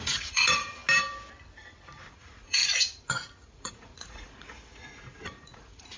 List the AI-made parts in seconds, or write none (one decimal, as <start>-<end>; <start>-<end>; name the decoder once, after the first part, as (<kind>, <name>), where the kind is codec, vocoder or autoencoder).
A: 0.0-0.8 (vocoder, Vocos); 2.1-6.0